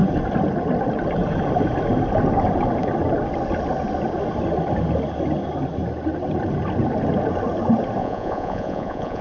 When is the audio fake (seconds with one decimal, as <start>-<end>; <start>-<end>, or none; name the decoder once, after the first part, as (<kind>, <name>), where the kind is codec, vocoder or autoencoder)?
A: 8.0-9.2 (vocoder, Vocos)